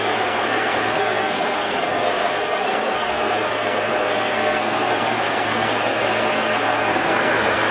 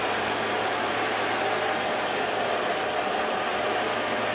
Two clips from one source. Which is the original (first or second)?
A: second